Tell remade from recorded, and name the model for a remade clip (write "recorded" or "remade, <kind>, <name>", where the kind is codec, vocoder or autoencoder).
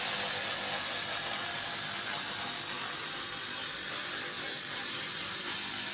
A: recorded